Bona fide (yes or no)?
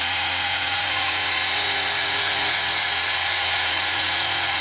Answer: no